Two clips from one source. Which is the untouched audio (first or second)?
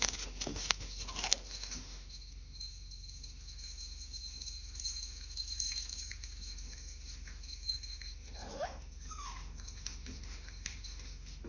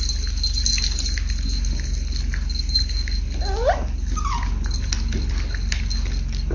second